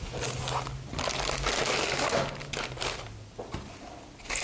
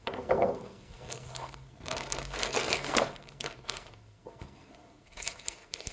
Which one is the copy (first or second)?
second